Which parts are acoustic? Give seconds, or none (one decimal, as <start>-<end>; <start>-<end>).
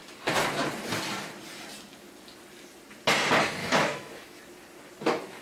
0.0-3.6; 4.4-5.4